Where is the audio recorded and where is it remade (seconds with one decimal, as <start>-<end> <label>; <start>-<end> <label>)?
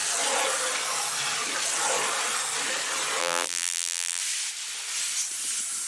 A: 0.0-3.2 recorded; 3.2-4.2 remade; 4.2-5.9 recorded